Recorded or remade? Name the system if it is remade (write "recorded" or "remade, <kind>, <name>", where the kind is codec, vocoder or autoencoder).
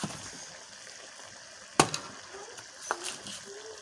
recorded